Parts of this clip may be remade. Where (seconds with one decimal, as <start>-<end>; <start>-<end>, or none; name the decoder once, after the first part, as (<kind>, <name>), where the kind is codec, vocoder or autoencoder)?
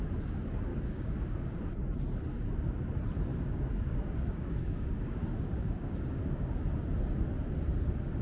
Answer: 0.7-1.6 (codec, DAC); 3.3-6.6